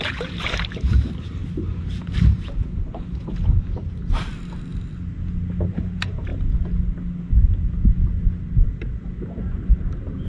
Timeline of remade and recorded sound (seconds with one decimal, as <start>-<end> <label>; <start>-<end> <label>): 0.0-1.4 remade; 1.4-5.7 recorded; 5.7-6.3 remade; 6.3-9.6 recorded; 9.6-10.3 remade